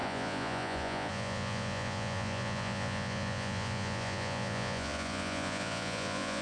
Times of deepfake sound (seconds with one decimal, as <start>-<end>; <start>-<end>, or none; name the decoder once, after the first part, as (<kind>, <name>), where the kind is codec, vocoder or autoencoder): 0.0-6.4 (vocoder, Vocos)